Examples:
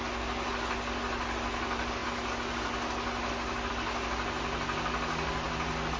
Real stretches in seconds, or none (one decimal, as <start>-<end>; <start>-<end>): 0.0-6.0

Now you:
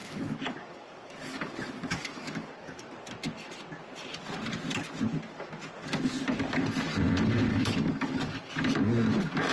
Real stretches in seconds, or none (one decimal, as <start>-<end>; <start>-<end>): 2.9-7.5; 8.5-9.5

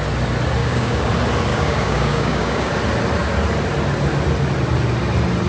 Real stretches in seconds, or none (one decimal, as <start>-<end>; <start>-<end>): 0.0-0.6; 1.1-1.5; 2.7-5.5

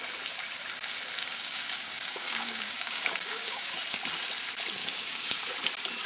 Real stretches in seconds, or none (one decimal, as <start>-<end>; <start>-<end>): 0.0-1.2; 3.7-4.8; 5.4-6.1

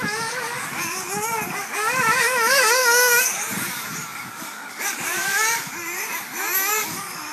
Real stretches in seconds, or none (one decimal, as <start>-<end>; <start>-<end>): none

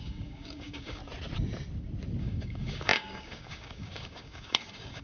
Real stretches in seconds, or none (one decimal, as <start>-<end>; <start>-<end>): 1.0-2.2